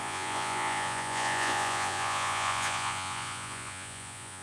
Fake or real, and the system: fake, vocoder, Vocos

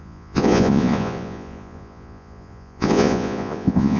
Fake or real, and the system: fake, vocoder, Vocos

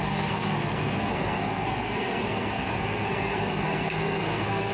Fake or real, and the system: fake, codec, SNAC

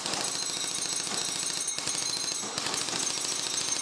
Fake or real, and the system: real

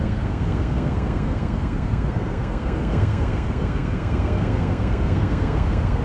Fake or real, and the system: fake, codec, SNAC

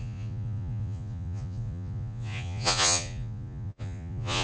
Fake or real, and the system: fake, vocoder, Vocos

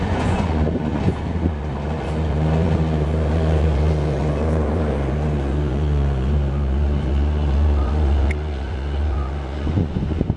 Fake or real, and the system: fake, vocoder, Vocos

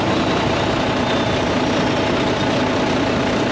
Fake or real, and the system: real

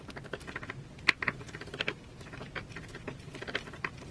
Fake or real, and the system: real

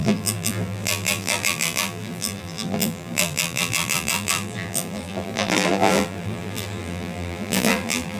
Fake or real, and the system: fake, vocoder, BigVGAN v2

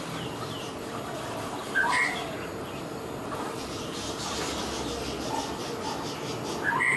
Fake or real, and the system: real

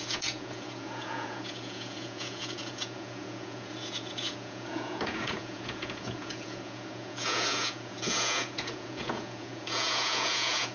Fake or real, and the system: fake, vocoder, Vocos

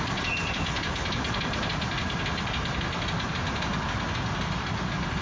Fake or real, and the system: real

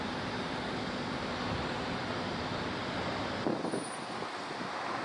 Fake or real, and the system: fake, vocoder, BigVGAN v2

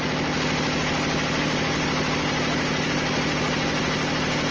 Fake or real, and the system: real